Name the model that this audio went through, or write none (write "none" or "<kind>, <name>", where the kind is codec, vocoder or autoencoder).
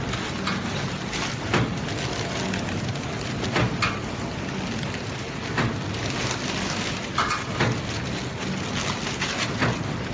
none